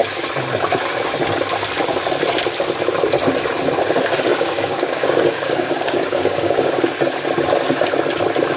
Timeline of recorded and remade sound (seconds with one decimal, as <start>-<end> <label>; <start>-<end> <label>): 0.0-4.3 recorded; 4.3-6.7 remade; 6.7-8.6 recorded

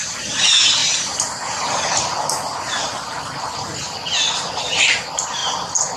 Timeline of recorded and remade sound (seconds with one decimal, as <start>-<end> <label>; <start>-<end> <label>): 0.0-6.0 recorded

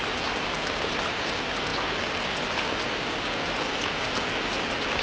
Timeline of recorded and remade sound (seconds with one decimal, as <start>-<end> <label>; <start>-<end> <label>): 0.0-5.0 recorded

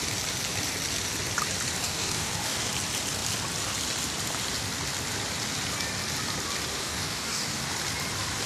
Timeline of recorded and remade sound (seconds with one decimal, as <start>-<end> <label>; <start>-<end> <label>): 0.0-1.8 recorded; 1.8-2.7 remade; 2.7-6.8 recorded; 6.8-7.6 remade; 7.6-8.5 recorded